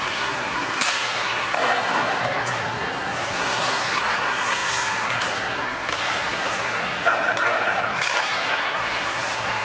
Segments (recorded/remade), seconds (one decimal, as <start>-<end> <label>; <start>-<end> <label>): 0.0-9.6 remade